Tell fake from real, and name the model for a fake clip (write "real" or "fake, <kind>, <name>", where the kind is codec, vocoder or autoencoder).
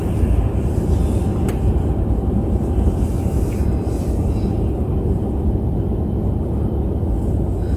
real